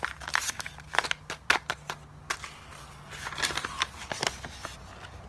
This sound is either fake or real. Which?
real